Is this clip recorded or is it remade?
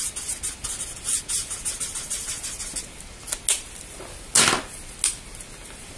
recorded